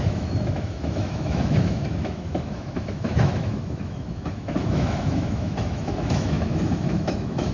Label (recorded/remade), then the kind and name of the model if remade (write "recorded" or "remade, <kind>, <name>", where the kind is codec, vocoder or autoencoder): remade, autoencoder, DAC-VAE